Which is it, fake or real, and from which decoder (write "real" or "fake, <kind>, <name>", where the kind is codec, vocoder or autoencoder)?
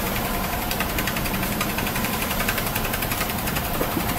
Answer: fake, vocoder, BigVGAN v2